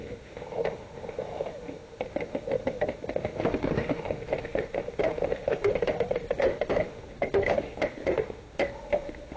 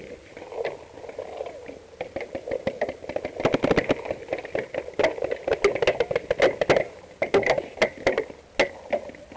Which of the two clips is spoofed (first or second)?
first